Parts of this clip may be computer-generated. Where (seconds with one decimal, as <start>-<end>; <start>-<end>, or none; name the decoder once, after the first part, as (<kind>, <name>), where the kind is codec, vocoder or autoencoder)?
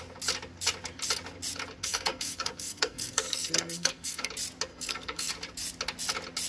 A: 1.8-4.3 (codec, SNAC); 4.7-5.3